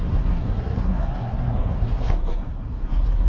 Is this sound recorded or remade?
remade